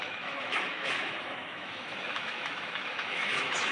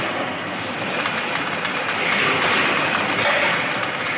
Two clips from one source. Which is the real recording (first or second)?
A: second